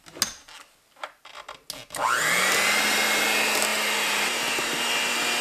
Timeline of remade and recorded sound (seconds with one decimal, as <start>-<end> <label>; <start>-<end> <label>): 0.0-5.4 recorded